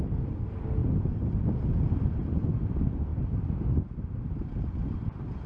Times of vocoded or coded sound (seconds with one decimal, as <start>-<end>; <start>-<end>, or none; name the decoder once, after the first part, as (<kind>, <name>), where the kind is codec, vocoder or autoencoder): none